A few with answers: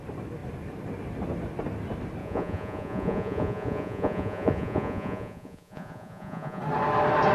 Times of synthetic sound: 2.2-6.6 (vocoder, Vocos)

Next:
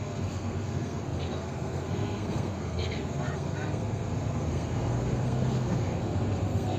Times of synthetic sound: 0.0-6.8 (codec, SNAC)

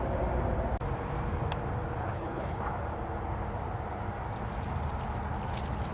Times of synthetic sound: 2.0-2.6 (codec, HILCodec)

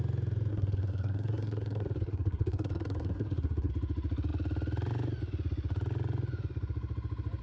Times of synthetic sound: 0.5-3.7 (codec, SNAC)